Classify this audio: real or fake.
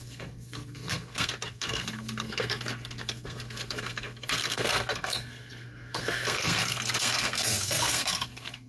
fake